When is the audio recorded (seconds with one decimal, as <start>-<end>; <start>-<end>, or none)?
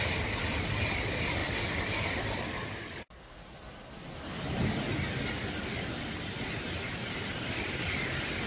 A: 0.0-8.5